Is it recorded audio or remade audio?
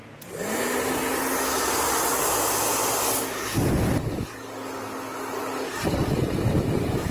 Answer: recorded